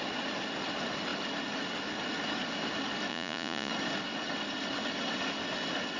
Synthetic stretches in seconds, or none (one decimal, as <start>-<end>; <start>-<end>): 3.1-3.7